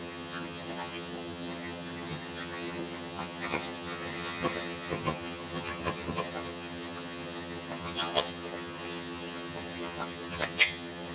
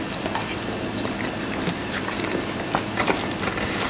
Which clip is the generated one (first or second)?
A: first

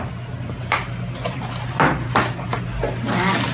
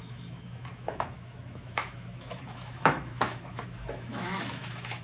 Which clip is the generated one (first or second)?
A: second